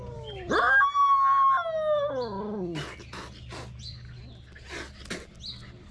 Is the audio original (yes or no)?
yes